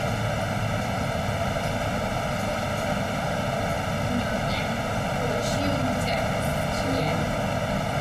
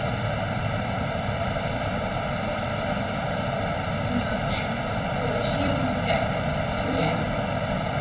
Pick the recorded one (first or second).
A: first